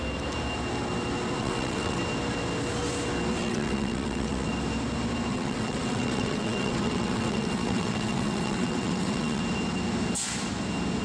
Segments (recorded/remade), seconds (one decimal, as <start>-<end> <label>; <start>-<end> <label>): 0.0-1.4 recorded; 1.4-2.0 remade; 2.0-3.3 recorded; 3.3-4.5 remade; 4.5-5.3 recorded; 5.3-9.4 remade; 9.4-11.0 recorded